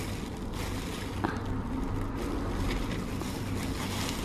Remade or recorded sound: recorded